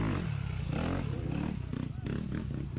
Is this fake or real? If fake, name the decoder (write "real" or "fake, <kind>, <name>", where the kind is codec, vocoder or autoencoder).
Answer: real